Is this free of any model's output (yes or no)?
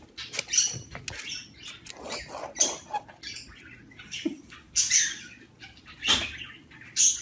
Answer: yes